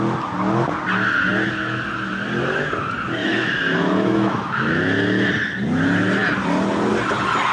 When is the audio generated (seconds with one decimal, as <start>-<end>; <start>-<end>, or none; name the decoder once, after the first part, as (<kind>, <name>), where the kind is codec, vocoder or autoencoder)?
3.2-5.3 (autoencoder, DAC-VAE)

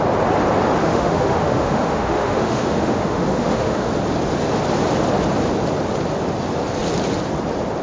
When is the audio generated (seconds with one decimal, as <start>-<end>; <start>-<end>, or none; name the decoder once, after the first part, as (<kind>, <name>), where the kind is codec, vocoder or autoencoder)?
0.8-3.9 (autoencoder, DAC-VAE)

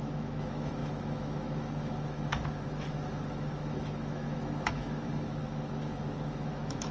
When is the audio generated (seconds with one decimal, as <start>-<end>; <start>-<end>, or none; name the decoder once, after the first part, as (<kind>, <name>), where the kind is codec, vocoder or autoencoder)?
0.0-6.9 (autoencoder, DAC-VAE)

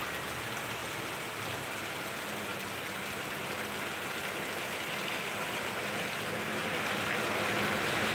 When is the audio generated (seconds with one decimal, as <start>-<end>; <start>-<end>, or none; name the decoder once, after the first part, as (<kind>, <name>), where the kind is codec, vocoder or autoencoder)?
none

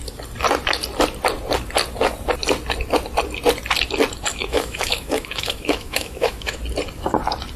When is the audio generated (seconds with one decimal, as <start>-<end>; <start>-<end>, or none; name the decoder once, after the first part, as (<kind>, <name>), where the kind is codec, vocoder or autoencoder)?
4.3-6.6 (autoencoder, DAC-VAE)

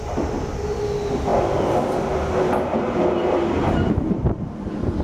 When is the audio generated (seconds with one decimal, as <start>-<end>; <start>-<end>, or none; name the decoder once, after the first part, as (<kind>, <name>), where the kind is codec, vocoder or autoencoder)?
none

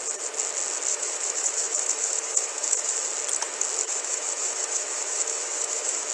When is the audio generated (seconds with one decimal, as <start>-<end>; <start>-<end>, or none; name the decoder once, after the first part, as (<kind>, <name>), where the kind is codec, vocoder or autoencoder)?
0.9-3.1 (autoencoder, DAC-VAE); 3.8-6.1